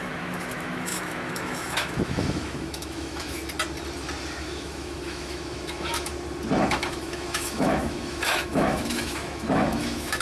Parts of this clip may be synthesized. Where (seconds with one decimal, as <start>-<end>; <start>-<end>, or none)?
0.0-3.4; 4.4-6.1; 6.7-10.2